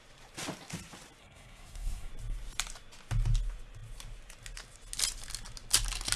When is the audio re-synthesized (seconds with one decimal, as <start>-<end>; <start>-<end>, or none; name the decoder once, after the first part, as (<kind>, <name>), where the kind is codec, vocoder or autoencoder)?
1.2-2.1 (codec, SNAC)